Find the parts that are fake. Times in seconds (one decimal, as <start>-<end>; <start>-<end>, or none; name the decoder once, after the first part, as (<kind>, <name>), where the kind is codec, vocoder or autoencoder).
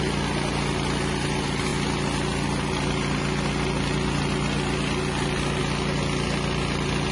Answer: none